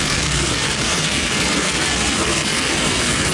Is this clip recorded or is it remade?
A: remade